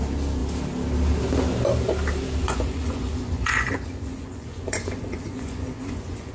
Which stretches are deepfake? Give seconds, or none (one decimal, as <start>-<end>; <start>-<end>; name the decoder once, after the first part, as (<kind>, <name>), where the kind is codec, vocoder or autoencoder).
2.4-6.3 (vocoder, Vocos)